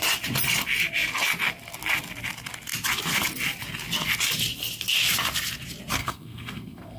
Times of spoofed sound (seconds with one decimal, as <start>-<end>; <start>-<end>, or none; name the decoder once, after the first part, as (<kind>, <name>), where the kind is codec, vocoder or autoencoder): 6.0-7.0 (codec, SNAC)